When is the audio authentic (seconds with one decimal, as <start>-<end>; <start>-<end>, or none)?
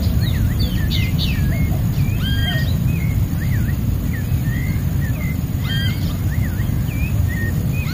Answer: 0.0-7.9